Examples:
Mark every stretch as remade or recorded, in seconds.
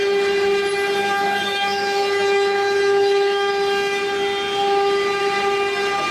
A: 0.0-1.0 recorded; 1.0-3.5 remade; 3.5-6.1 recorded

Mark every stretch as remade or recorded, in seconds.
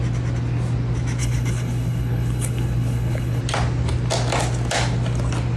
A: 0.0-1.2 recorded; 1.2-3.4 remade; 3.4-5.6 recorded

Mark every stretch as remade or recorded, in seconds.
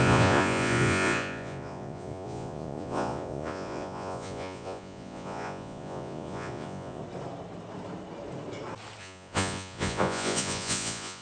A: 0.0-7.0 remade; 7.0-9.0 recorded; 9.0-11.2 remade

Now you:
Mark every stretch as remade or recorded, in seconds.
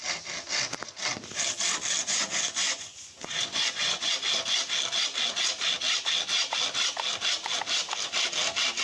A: 0.0-2.0 recorded; 2.0-4.1 remade; 4.1-8.8 recorded